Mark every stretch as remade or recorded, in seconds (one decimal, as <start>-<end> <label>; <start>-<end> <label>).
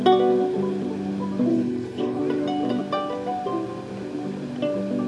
0.0-1.5 recorded; 1.5-2.2 remade; 2.2-5.1 recorded